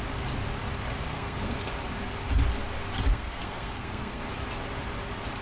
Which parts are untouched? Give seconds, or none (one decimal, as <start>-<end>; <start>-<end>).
0.0-1.1; 1.7-3.1; 4.2-5.4